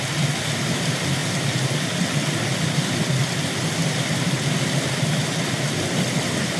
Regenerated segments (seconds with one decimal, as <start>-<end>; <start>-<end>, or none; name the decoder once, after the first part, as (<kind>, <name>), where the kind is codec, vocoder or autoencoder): 3.8-5.5 (vocoder, BigVGAN v2)